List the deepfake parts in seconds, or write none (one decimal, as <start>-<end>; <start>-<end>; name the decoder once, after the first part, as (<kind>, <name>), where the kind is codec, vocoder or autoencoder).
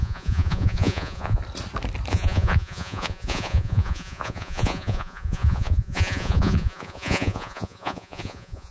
0.0-1.4 (vocoder, Vocos); 2.1-8.7